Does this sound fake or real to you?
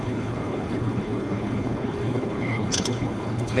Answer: fake